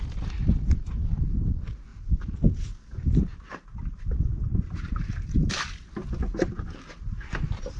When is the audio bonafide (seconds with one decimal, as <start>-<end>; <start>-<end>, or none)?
0.0-1.9; 3.2-7.8